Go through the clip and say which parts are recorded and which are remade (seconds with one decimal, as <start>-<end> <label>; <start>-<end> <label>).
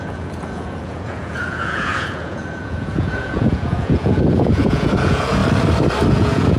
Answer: 0.0-5.4 remade; 5.4-6.1 recorded; 6.1-6.6 remade